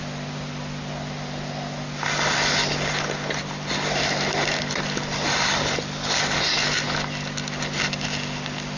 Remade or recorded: recorded